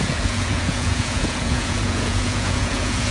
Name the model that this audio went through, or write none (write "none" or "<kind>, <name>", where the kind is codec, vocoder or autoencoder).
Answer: vocoder, Vocos